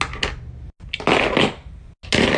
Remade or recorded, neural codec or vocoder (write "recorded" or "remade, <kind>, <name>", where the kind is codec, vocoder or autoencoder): recorded